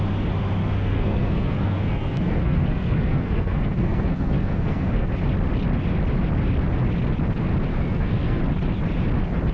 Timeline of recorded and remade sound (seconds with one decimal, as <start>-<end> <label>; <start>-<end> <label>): 0.0-0.6 recorded; 0.6-5.1 remade; 5.1-7.7 recorded; 7.7-8.4 remade; 8.4-9.5 recorded